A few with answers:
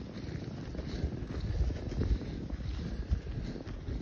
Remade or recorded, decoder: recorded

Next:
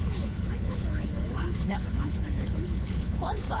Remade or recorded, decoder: remade, codec, HILCodec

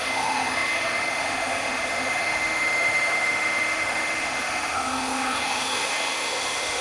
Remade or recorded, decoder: remade, autoencoder, DAC-VAE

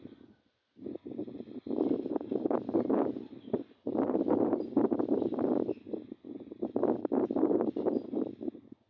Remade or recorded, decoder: recorded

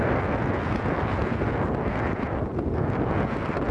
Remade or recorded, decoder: recorded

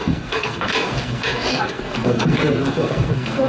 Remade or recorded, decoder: remade, codec, SNAC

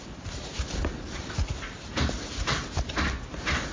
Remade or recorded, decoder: recorded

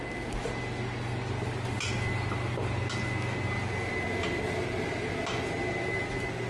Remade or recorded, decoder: recorded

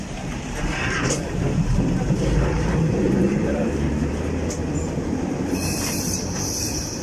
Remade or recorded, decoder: remade, vocoder, BigVGAN v2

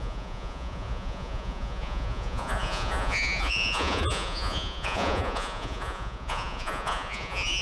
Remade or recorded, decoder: remade, vocoder, Vocos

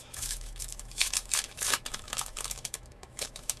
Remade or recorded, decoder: remade, autoencoder, DAC-VAE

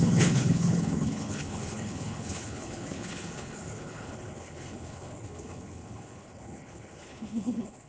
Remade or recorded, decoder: remade, codec, HILCodec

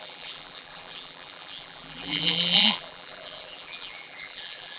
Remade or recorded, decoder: remade, vocoder, BigVGAN v2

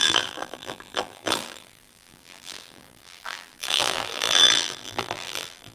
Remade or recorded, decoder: remade, vocoder, BigVGAN v2